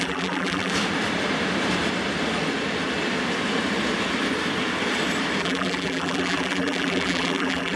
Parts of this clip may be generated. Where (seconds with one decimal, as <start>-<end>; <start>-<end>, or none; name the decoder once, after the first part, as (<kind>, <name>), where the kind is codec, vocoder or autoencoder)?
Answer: 0.0-0.7 (vocoder, BigVGAN v2); 5.4-7.8